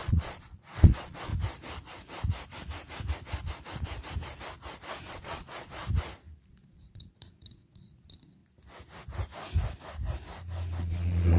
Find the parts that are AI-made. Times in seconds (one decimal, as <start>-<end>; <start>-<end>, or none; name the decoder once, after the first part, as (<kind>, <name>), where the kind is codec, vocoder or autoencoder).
0.0-1.3 (vocoder, Vocos); 5.1-5.8; 6.5-8.4; 10.8-11.4